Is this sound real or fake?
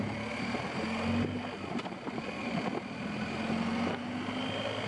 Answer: real